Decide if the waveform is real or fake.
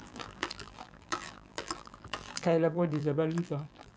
fake